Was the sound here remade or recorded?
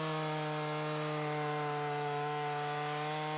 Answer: recorded